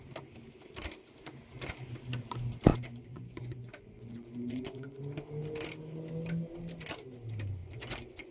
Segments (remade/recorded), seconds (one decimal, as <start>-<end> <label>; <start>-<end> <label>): 0.0-2.7 recorded; 2.7-5.0 remade; 5.0-7.6 recorded; 7.6-8.3 remade